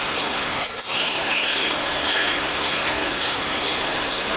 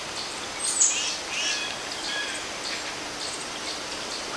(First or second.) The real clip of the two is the second